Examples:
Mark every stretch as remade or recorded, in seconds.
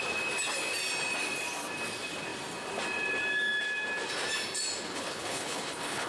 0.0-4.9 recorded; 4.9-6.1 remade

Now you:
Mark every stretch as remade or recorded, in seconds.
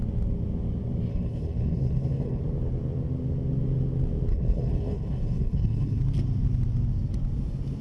0.0-1.1 recorded; 1.1-2.4 remade; 2.4-4.3 recorded; 4.3-6.0 remade; 6.0-7.8 recorded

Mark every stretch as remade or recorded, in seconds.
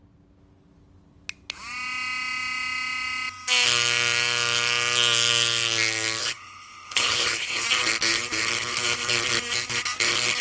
0.0-6.2 recorded; 6.2-7.6 remade; 7.6-10.4 recorded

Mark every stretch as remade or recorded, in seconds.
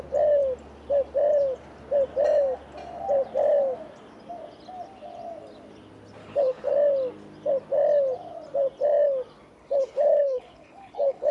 0.0-6.2 recorded; 6.2-6.7 remade; 6.7-9.6 recorded; 9.6-11.3 remade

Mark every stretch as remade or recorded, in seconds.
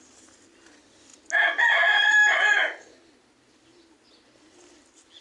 0.0-5.2 recorded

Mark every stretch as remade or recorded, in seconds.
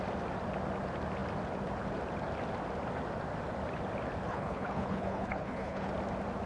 0.0-4.3 recorded; 4.3-5.9 remade; 5.9-6.5 recorded